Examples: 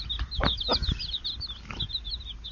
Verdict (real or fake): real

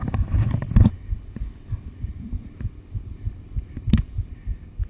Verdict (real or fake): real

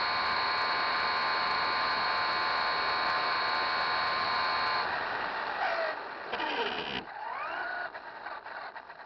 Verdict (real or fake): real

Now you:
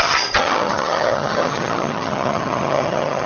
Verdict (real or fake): fake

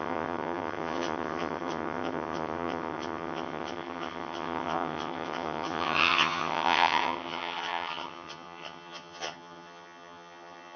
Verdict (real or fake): fake